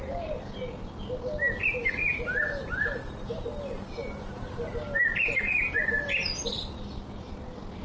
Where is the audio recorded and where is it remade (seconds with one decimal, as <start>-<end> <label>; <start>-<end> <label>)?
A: 0.0-7.8 recorded